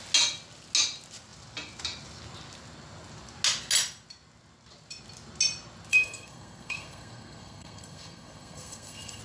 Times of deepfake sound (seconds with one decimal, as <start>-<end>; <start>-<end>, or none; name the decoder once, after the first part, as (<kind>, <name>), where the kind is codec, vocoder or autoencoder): 5.9-9.2 (codec, SNAC)